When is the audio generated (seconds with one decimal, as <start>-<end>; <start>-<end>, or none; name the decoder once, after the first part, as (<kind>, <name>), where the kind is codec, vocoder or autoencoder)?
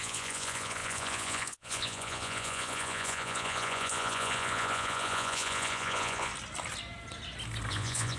0.0-6.3 (vocoder, Vocos); 7.7-8.2